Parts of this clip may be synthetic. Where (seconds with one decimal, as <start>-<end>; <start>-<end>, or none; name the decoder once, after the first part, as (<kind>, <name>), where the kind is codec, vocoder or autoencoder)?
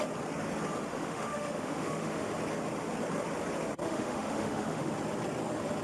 0.9-2.3 (autoencoder, DAC-VAE); 3.8-4.9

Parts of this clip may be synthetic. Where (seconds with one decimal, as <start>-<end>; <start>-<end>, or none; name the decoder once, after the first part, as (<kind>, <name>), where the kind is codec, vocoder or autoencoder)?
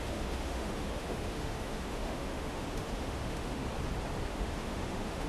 0.0-3.6 (autoencoder, DAC-VAE); 4.3-5.3